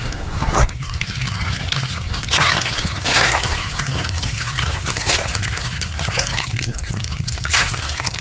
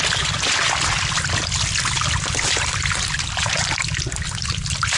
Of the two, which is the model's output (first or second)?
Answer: first